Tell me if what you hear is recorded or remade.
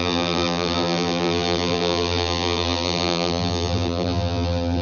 remade